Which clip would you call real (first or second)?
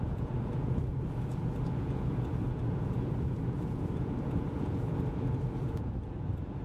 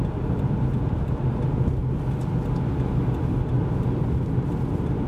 second